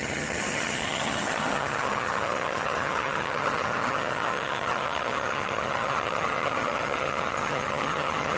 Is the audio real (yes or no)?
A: no